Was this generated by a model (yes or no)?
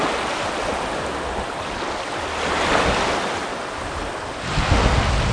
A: no